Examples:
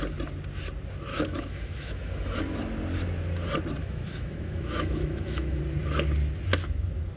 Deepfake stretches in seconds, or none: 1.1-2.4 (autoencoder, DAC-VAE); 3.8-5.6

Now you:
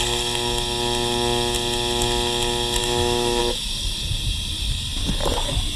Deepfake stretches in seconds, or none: 2.8-3.4 (autoencoder, DAC-VAE)

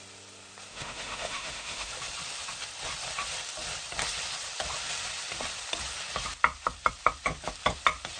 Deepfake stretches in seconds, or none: 0.7-1.9 (autoencoder, DAC-VAE)